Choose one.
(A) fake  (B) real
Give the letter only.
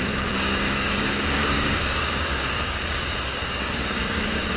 A